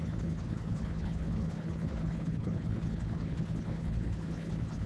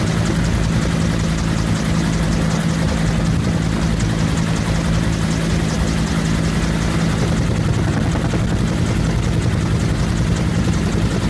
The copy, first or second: first